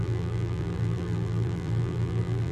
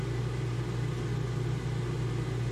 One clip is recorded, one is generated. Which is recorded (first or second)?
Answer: second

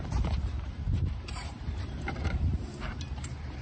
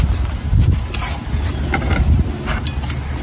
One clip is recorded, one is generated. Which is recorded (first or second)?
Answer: second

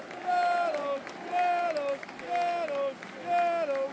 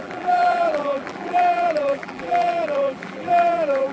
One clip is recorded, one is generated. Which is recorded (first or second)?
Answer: first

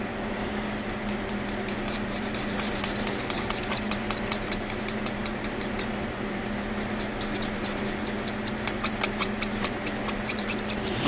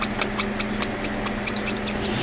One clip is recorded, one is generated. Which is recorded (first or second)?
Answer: second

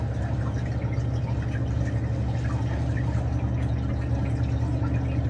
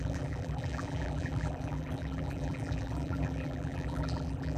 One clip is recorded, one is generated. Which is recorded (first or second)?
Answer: first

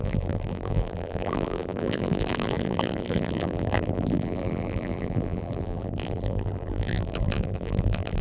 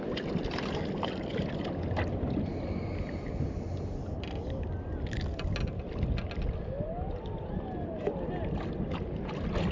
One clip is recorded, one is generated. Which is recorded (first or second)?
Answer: second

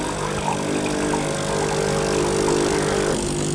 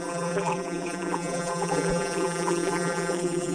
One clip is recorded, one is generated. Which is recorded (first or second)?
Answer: first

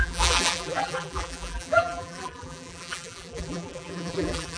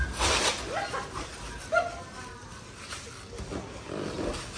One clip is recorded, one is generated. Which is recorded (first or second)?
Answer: second